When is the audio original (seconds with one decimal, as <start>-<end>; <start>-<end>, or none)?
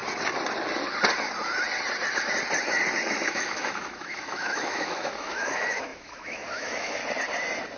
0.0-3.3; 7.0-7.8